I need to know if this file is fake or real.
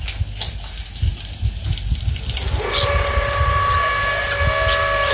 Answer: real